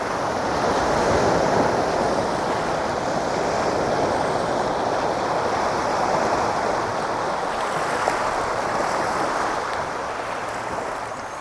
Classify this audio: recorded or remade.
recorded